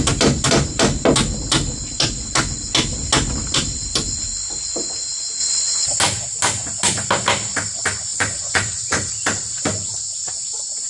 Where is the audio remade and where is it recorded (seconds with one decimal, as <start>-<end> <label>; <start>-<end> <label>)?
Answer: 0.0-5.4 recorded; 5.4-6.0 remade; 6.0-8.1 recorded; 8.1-9.1 remade; 9.1-10.9 recorded